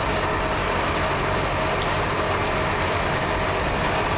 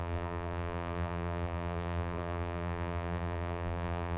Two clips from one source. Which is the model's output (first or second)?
second